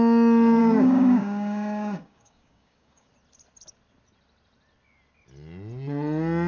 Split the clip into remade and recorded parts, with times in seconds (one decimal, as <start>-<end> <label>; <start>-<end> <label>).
0.0-0.6 recorded; 0.6-3.1 remade; 3.1-6.5 recorded